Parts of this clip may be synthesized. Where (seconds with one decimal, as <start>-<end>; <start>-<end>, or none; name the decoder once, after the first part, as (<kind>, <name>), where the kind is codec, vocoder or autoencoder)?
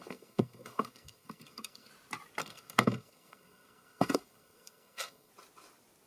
0.0-1.9 (codec, SNAC); 2.4-5.3